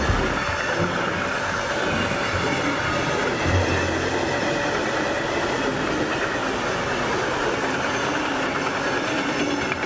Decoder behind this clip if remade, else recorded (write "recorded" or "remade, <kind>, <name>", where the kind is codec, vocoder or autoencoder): recorded